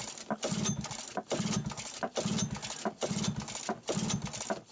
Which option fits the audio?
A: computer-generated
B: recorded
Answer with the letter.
B